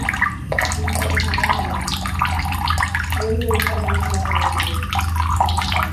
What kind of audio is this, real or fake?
real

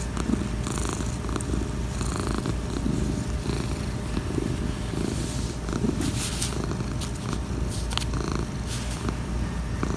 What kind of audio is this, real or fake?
real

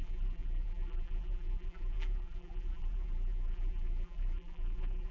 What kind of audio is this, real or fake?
fake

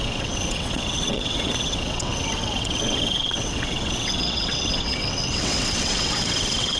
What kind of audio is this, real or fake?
fake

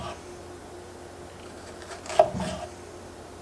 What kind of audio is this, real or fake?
real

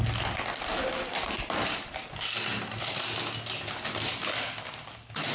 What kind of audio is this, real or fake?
real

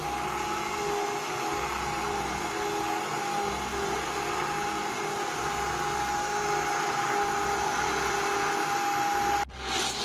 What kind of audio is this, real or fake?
real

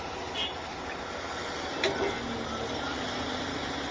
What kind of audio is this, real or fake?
real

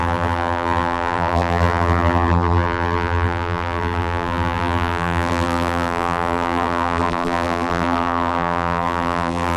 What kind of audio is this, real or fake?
fake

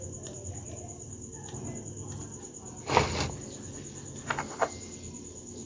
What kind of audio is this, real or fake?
real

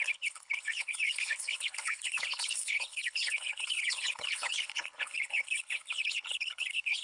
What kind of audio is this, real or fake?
fake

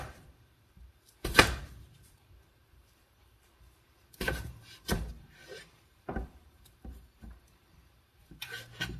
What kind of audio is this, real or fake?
fake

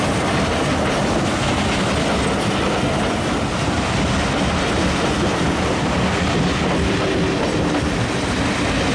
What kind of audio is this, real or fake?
real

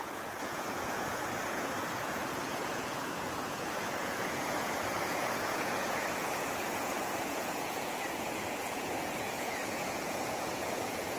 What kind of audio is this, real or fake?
fake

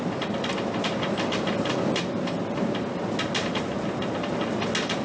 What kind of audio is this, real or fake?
real